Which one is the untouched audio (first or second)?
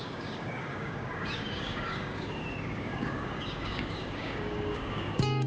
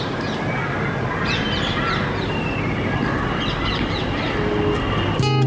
second